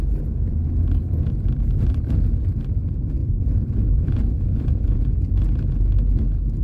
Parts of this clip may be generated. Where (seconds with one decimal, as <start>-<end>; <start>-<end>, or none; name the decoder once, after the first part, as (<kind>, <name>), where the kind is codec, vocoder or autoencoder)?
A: 3.2-5.2 (vocoder, Vocos)